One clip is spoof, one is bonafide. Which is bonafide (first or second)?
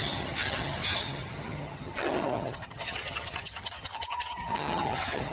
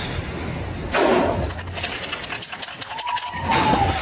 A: second